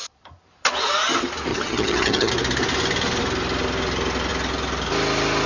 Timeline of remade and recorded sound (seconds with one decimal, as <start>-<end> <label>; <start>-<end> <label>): 0.0-1.5 recorded; 1.5-2.3 remade; 2.3-5.5 recorded